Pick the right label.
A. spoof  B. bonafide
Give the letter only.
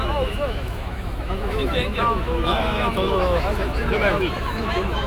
A